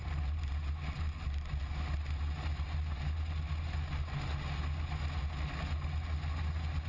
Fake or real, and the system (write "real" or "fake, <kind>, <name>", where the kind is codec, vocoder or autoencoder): real